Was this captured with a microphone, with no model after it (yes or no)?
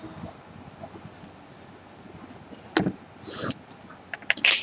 yes